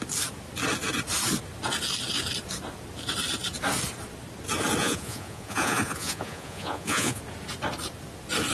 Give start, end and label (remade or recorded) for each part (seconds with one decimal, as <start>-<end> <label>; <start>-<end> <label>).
0.0-4.8 recorded; 4.8-7.2 remade; 7.2-8.5 recorded